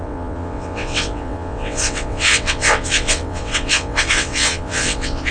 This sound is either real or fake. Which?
fake